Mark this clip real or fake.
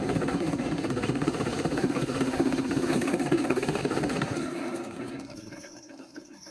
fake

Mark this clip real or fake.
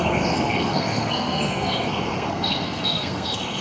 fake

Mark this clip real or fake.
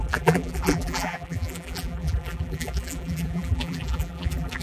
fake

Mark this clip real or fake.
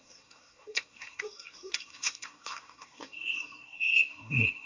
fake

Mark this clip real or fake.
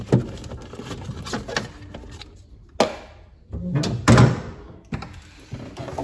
real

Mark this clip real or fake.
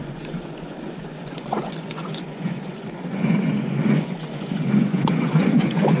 fake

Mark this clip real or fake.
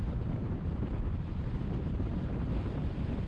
fake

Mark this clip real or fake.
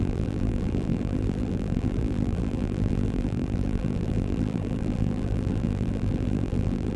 fake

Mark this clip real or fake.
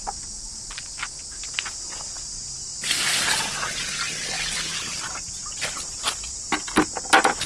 real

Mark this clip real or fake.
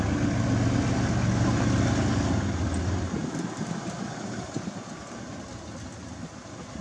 real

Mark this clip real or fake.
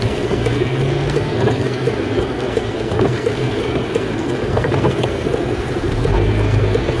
fake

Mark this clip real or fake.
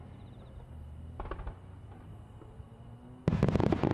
real